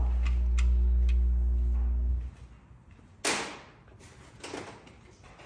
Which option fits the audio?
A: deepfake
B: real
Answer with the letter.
B